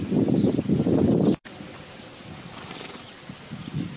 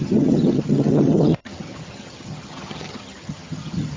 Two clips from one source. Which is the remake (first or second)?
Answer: second